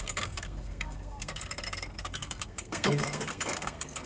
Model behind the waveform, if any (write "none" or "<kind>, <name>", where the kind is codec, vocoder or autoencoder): codec, SNAC